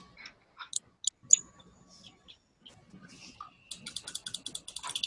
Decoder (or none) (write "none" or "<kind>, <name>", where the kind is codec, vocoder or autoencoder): none